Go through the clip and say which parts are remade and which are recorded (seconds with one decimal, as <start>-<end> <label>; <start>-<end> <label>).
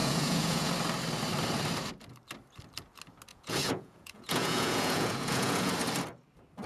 0.0-0.7 remade; 0.7-3.3 recorded; 3.3-5.7 remade; 5.7-6.7 recorded